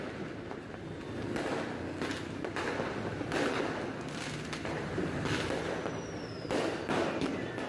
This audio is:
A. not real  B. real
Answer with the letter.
B